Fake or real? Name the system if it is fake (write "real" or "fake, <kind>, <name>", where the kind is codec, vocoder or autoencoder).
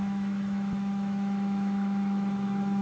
fake, autoencoder, DAC-VAE